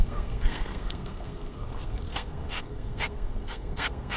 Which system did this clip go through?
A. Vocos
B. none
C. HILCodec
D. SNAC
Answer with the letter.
D